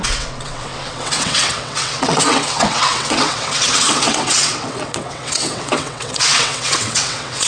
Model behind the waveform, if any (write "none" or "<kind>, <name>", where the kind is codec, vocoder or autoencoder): vocoder, WaveNeXt